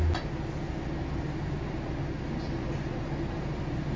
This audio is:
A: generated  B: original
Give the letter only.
B